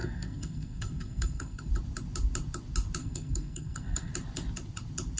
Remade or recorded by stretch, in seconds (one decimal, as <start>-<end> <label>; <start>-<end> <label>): 0.0-1.7 remade; 1.7-3.0 recorded; 3.0-4.1 remade; 4.1-5.2 recorded